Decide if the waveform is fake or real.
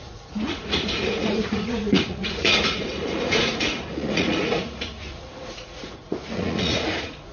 fake